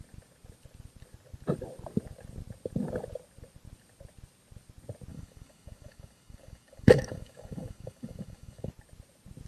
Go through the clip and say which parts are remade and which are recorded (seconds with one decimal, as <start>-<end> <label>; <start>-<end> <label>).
0.0-5.1 recorded; 5.1-8.7 remade; 8.7-9.5 recorded